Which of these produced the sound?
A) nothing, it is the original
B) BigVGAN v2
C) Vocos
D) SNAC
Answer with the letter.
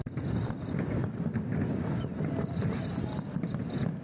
A